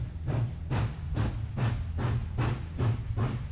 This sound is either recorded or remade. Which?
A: recorded